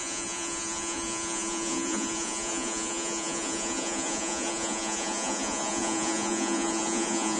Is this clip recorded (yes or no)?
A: no